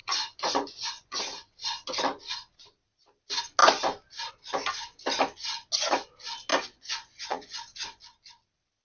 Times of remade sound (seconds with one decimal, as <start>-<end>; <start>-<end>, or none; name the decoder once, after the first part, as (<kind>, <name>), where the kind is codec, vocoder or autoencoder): 0.0-1.2 (vocoder, Vocos); 6.5-8.0